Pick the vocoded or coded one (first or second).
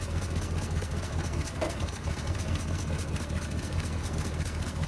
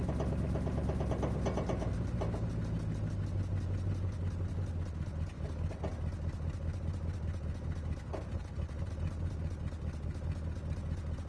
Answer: first